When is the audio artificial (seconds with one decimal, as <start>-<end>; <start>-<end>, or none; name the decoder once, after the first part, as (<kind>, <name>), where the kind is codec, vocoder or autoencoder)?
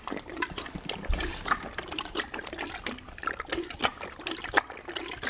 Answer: none